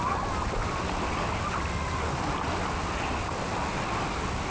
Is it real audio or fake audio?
real